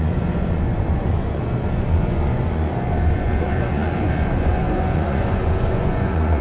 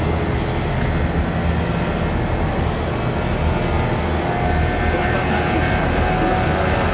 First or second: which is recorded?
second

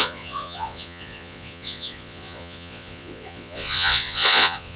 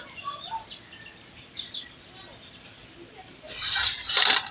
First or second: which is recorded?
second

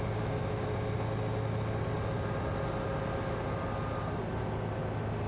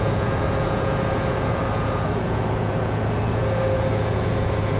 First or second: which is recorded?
first